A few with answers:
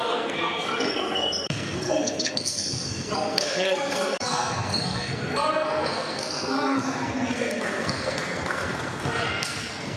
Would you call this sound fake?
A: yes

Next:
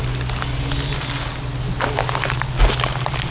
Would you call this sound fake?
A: no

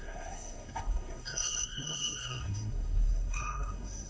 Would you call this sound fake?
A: yes